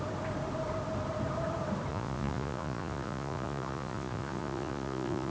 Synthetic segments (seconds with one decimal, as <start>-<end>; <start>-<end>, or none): 1.9-5.3